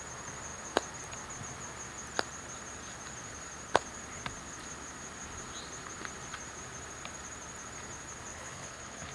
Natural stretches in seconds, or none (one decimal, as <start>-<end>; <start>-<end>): 0.0-8.3